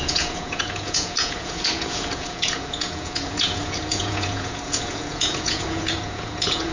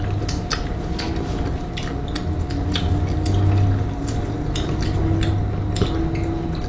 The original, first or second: second